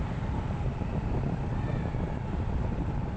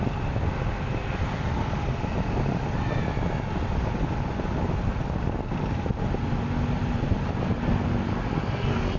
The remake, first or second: first